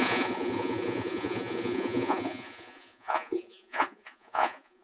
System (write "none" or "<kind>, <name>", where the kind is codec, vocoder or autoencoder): vocoder, Vocos